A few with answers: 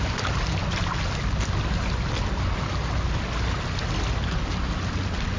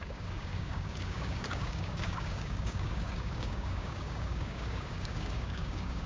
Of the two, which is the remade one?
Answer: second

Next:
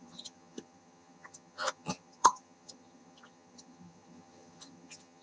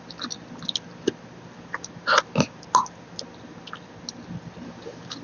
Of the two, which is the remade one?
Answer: first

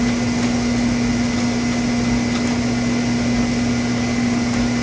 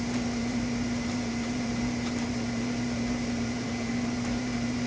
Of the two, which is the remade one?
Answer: second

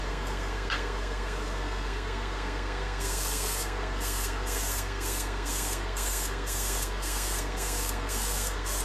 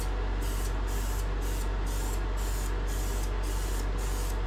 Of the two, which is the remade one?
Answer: first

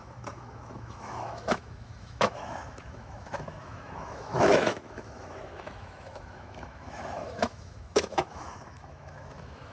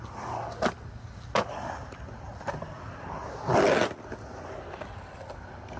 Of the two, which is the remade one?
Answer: first